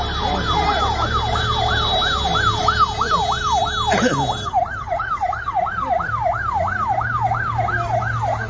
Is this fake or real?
real